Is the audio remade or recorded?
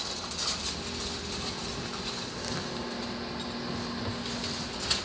recorded